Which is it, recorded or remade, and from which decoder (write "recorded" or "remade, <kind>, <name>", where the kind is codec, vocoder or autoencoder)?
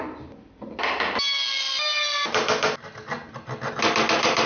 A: recorded